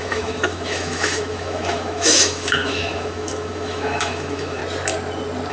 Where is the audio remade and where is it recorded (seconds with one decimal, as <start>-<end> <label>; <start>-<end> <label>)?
0.0-4.6 remade; 4.6-5.5 recorded